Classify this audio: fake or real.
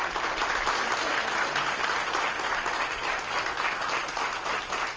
real